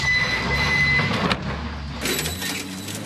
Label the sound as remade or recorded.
recorded